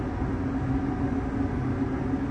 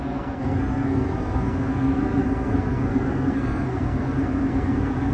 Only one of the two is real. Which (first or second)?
first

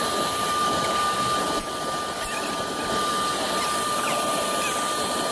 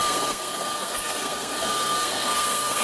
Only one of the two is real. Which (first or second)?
first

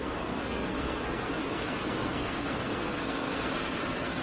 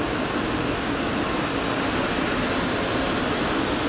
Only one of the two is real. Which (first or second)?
second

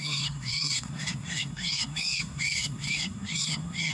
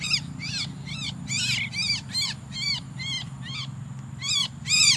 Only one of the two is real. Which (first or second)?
second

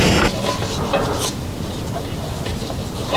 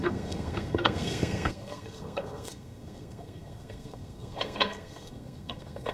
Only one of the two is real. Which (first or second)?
first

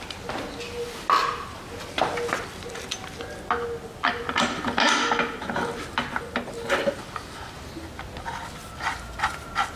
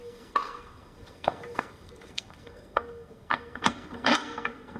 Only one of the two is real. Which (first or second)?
first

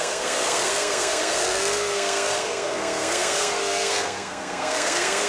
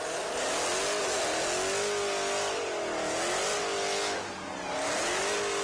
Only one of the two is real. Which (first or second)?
second